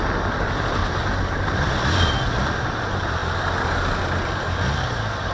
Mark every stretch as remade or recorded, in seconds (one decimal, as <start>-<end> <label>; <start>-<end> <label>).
0.0-0.8 recorded; 0.8-1.7 remade; 1.7-5.3 recorded

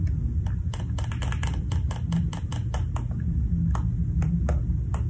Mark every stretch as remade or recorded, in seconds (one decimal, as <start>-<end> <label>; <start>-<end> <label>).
0.0-5.1 recorded

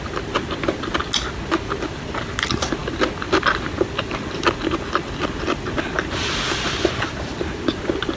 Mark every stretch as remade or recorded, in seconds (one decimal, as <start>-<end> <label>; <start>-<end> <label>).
0.0-8.2 recorded

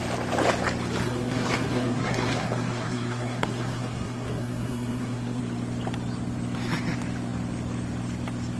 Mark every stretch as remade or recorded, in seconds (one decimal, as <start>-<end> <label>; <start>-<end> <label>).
0.0-1.0 recorded; 1.0-5.4 remade; 5.4-8.6 recorded